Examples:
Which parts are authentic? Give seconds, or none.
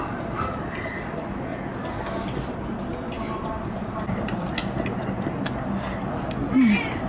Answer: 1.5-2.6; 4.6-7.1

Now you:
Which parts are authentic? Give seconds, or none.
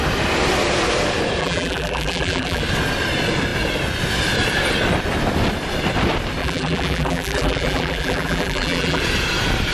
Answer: 0.0-1.4; 2.6-6.4; 9.0-9.7